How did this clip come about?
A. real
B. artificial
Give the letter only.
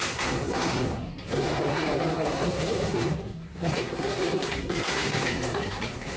B